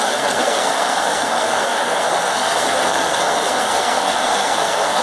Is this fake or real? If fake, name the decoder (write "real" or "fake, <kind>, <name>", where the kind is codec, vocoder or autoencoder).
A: fake, codec, SNAC